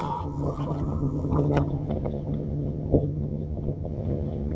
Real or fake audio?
fake